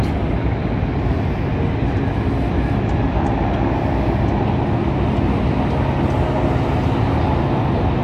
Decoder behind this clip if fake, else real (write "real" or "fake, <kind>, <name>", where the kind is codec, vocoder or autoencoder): real